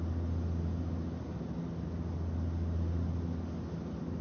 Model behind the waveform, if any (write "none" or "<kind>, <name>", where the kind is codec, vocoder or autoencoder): none